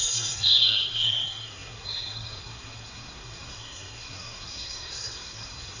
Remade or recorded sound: remade